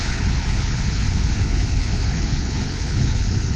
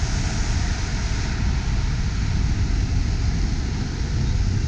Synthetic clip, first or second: first